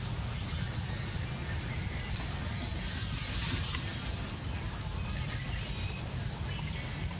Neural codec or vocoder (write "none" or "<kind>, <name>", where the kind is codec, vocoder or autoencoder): none